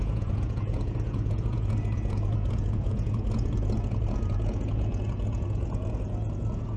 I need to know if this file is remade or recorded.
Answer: remade